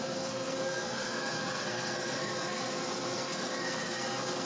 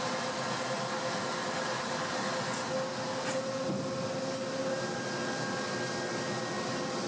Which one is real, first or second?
second